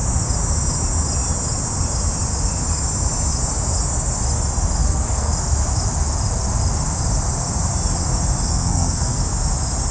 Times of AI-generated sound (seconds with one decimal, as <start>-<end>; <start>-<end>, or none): 4.8-5.3; 8.5-9.2